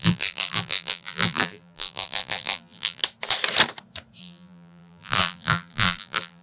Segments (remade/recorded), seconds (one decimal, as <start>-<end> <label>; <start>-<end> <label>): 0.0-3.0 remade; 3.0-4.2 recorded; 4.2-6.4 remade